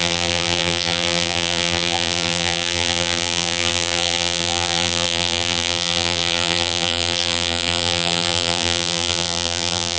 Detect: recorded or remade remade